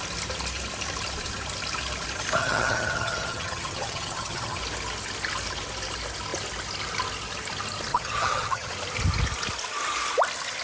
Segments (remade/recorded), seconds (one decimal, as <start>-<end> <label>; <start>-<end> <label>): 0.0-2.4 recorded; 2.4-4.6 remade; 4.6-7.9 recorded; 7.9-8.7 remade; 8.7-10.6 recorded